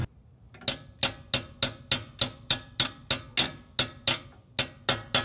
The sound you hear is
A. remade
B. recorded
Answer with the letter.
B